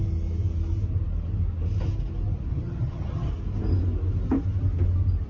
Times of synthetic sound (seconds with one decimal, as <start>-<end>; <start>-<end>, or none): 2.5-3.3